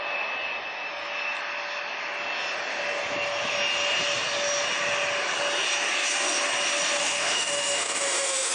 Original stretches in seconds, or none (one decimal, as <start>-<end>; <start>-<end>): 0.0-7.0